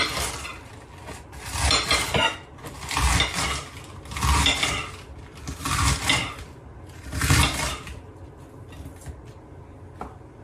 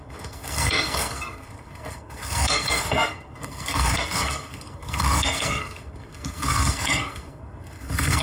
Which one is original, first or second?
first